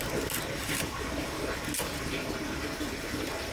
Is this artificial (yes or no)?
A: no